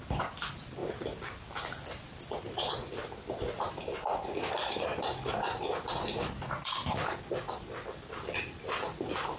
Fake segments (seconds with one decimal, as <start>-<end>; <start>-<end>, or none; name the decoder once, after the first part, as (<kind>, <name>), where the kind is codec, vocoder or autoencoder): none